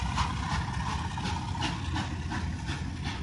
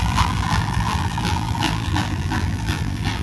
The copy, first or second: second